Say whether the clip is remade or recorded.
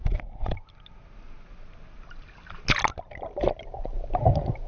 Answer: recorded